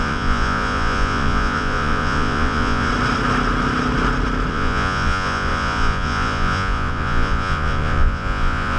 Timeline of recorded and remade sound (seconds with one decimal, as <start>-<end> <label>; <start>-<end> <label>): 0.0-2.9 remade; 2.9-4.5 recorded; 4.5-8.8 remade